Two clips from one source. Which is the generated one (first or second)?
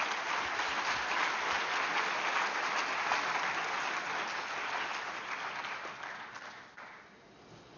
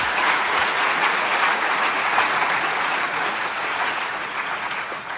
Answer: second